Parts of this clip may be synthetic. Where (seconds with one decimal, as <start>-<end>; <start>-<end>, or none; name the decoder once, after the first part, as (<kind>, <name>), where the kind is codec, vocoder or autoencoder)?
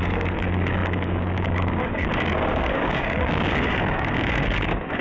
0.0-5.0 (codec, DAC)